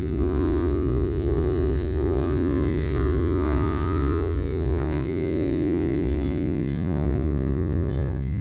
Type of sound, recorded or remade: remade